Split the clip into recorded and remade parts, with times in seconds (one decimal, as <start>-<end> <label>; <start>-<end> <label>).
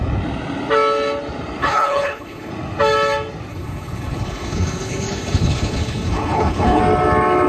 0.0-1.6 recorded; 1.6-2.5 remade; 2.5-3.5 recorded; 3.5-6.8 remade; 6.8-7.5 recorded